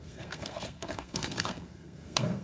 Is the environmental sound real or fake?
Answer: fake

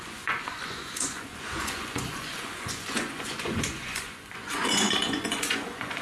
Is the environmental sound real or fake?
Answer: fake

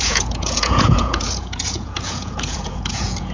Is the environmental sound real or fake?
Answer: fake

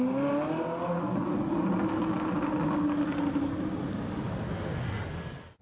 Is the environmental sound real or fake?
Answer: real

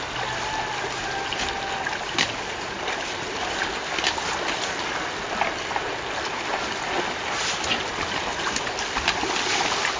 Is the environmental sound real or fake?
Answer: real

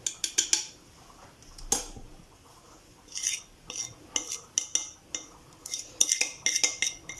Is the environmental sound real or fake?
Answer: real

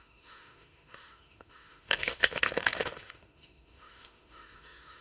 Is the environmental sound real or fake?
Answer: fake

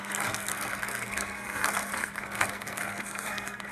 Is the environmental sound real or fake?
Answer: fake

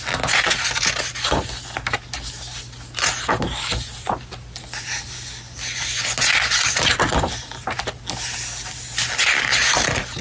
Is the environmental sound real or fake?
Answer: real